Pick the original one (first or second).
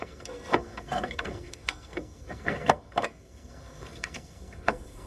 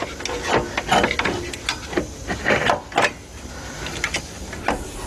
second